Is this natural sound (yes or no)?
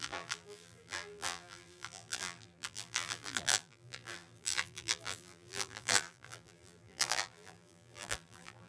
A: no